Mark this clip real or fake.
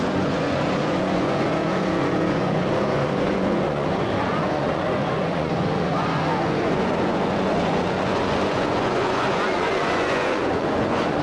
fake